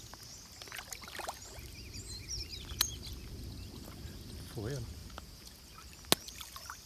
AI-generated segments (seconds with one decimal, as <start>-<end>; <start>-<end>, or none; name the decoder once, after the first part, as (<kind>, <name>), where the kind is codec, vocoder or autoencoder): 5.0-5.6 (vocoder, Vocos)